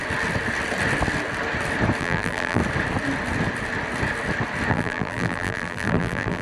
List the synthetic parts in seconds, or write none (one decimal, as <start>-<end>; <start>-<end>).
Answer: 2.0-2.6; 4.7-6.4